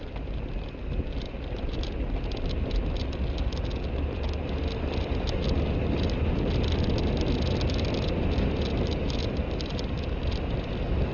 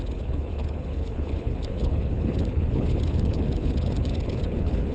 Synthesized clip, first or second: second